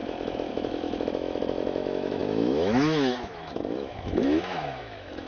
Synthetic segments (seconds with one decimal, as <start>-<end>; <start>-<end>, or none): 0.0-5.3